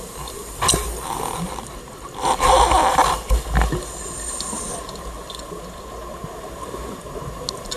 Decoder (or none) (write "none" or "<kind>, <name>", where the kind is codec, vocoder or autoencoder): none